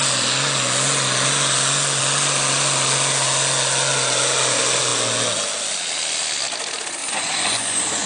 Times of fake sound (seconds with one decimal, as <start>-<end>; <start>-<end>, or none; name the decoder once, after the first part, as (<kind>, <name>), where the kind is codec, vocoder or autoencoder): 7.0-8.1 (vocoder, Vocos)